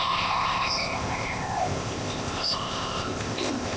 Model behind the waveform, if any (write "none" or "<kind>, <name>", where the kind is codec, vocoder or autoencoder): codec, ZipCodec